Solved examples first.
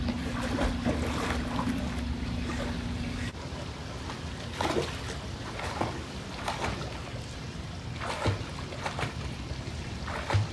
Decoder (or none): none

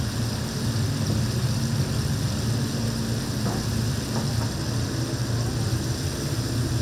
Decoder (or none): none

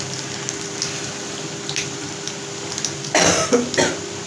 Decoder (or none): none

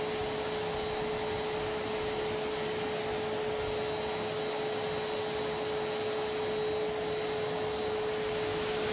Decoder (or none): none